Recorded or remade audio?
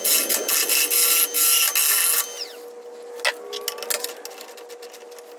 recorded